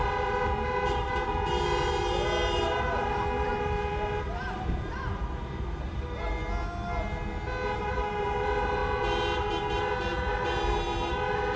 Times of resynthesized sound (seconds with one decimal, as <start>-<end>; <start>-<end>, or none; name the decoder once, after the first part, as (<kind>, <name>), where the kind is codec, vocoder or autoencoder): 0.0-6.4 (vocoder, BigVGAN v2); 7.8-11.6